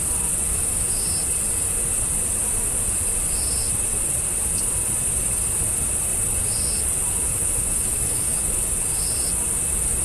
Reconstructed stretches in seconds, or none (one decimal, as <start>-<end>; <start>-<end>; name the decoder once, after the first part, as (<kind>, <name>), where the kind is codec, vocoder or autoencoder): 0.5-1.1 (autoencoder, DAC-VAE); 7.3-8.4